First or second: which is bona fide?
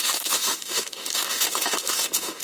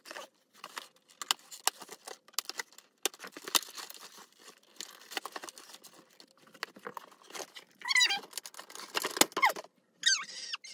second